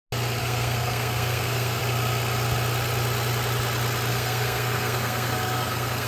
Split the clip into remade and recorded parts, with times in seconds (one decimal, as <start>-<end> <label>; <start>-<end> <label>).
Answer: 0.0-0.4 recorded; 0.4-1.8 remade; 1.8-4.1 recorded; 4.1-6.1 remade